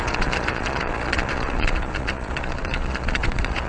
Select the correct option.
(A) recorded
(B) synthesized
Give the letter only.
B